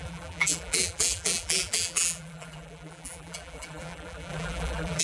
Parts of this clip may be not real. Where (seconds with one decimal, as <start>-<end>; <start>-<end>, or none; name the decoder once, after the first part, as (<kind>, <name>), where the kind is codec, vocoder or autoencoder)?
0.0-5.0 (vocoder, BigVGAN v2)